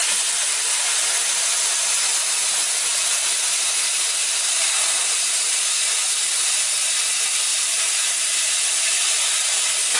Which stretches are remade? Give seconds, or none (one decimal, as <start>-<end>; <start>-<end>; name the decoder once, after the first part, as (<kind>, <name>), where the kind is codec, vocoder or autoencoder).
7.5-8.5 (vocoder, BigVGAN v2)